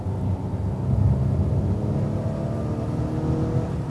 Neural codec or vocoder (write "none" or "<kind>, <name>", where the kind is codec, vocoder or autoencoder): none